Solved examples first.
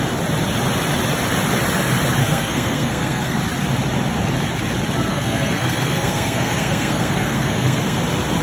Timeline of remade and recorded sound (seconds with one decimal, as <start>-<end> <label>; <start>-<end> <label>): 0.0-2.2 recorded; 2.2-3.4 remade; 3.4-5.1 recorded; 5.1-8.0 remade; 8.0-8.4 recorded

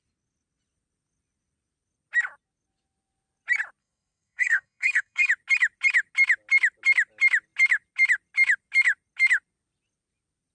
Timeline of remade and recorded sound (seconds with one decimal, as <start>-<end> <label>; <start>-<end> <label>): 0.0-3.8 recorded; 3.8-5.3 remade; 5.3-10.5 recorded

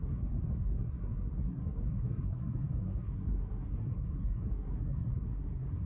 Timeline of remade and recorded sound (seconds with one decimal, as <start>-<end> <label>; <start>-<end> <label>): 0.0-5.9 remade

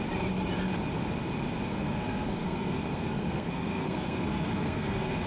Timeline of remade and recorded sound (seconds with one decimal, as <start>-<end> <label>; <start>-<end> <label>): 0.0-1.7 recorded; 1.7-5.3 remade